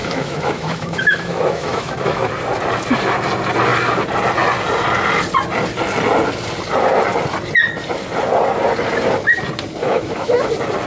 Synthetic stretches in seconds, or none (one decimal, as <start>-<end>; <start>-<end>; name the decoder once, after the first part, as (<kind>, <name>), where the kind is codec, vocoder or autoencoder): 0.0-2.3 (autoencoder, DAC-VAE); 9.8-10.5